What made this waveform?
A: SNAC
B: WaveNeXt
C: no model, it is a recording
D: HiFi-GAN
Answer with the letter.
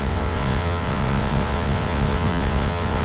B